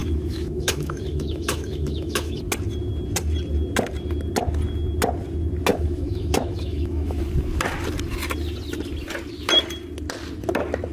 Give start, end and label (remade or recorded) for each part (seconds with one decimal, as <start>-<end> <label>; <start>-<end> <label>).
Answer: 0.0-2.4 remade; 2.4-5.7 recorded; 5.7-7.2 remade; 7.2-10.9 recorded